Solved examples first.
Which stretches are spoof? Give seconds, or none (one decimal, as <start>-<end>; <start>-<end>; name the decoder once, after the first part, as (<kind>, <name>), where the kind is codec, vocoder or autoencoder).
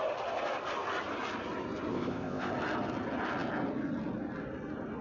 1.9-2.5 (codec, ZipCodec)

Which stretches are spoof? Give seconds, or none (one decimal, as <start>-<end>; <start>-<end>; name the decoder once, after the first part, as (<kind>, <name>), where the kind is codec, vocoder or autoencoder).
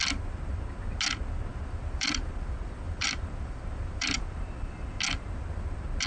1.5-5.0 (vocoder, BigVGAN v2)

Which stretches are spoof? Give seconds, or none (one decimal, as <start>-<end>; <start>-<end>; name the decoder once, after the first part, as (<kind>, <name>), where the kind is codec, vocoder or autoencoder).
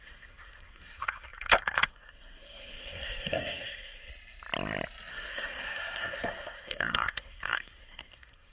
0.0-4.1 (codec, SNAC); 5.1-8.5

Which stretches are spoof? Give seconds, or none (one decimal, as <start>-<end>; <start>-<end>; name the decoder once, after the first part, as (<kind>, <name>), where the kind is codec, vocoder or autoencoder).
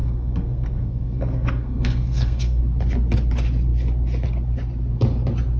0.0-2.6 (codec, SNAC)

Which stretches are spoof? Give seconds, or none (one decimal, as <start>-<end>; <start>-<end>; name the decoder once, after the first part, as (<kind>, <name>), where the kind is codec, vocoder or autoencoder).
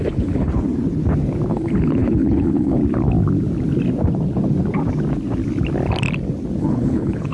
0.0-0.5 (codec, HILCodec); 1.5-2.8; 6.6-7.3